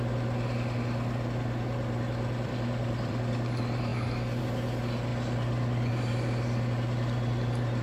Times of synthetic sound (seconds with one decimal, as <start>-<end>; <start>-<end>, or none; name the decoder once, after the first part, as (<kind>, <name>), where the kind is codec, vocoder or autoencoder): 0.0-3.9 (vocoder, BigVGAN v2); 4.4-5.1; 5.9-7.8

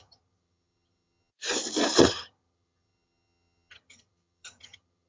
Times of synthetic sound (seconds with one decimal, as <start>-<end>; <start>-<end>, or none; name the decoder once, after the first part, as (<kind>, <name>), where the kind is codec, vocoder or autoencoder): 0.0-1.3 (vocoder, HiFi-GAN); 2.0-5.1

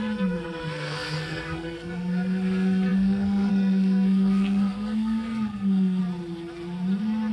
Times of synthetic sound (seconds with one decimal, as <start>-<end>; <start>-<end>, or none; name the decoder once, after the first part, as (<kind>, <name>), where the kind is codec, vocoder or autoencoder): 0.0-6.0 (codec, SNAC)

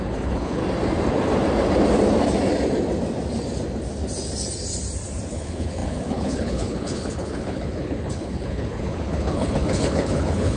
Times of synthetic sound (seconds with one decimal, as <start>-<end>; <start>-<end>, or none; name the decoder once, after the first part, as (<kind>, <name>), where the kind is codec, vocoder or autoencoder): 0.0-0.6 (codec, HILCodec); 5.3-10.6

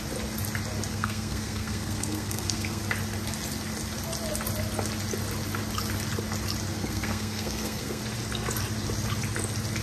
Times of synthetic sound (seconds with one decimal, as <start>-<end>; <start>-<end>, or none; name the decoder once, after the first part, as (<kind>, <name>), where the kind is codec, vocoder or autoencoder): 0.9-2.8 (codec, SNAC); 6.7-8.0